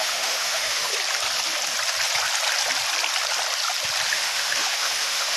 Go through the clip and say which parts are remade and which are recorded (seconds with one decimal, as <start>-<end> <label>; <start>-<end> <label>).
0.0-0.9 remade; 0.9-4.1 recorded; 4.1-5.4 remade